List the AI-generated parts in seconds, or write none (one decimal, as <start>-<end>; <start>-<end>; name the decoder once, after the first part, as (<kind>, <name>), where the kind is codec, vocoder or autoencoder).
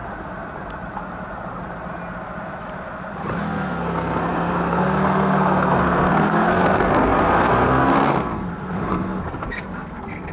3.4-10.3 (codec, SNAC)